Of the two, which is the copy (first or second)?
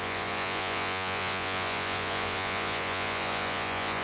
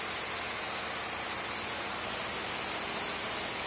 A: first